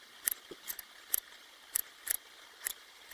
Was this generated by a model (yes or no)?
no